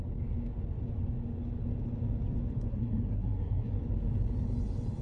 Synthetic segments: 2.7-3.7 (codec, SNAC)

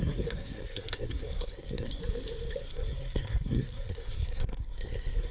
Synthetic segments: 0.0-2.0 (codec, SNAC); 2.6-5.3

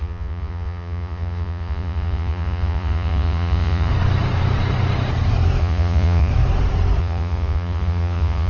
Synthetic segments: 0.0-3.9 (vocoder, Vocos); 5.6-6.3; 7.0-8.5

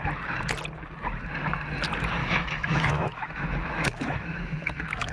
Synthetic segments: 2.2-5.1 (autoencoder, DAC-VAE)